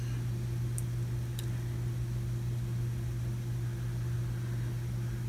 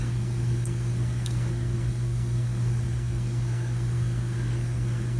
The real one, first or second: first